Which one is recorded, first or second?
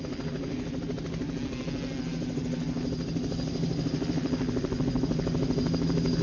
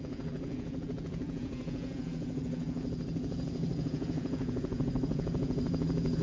first